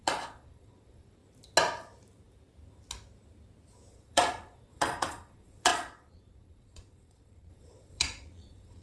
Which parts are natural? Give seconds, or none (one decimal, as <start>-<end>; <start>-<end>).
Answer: 1.2-3.9